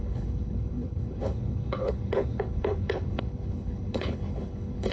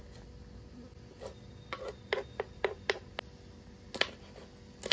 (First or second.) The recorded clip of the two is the second